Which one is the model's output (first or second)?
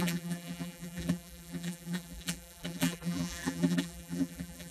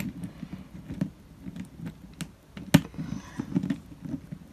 first